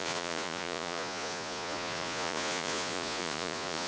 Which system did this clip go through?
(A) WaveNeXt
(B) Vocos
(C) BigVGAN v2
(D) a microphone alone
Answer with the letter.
B